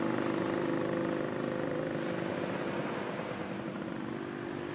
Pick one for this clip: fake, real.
real